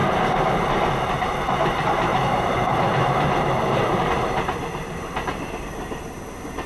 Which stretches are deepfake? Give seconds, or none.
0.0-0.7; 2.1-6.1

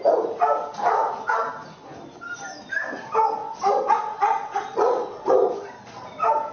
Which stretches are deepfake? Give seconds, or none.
3.4-5.5

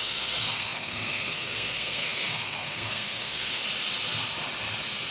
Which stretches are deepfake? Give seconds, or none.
0.0-3.6

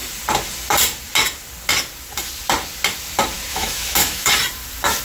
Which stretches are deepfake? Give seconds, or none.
3.5-4.3